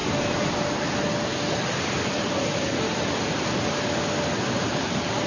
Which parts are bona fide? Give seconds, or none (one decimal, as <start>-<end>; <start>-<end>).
0.0-5.3